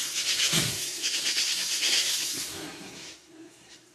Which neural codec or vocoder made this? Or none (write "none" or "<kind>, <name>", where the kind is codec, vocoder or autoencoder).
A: codec, SNAC